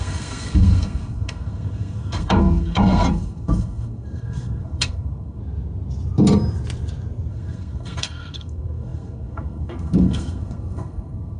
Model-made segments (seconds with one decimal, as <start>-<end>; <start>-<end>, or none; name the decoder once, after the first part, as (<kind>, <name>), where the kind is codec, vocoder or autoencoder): 0.0-5.4 (codec, SNAC); 7.3-11.4